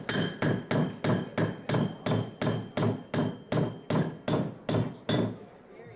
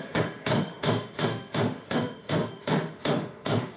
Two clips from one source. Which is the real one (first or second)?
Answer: first